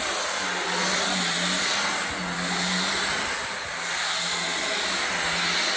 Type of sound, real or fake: real